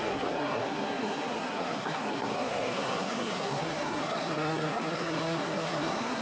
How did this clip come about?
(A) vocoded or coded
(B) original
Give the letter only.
A